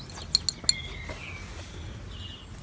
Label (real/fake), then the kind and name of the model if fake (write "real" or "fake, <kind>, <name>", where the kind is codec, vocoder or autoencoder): real